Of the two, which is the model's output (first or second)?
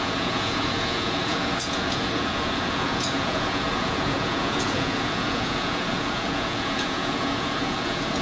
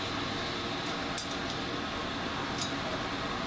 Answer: first